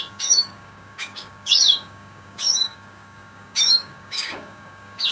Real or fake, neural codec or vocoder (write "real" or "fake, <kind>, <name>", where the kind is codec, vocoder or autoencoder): fake, codec, DAC